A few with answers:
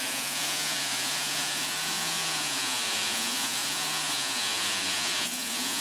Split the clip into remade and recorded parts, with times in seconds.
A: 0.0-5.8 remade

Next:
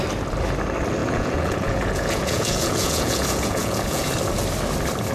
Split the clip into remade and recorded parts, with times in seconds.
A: 0.0-1.0 recorded; 1.0-4.1 remade; 4.1-5.1 recorded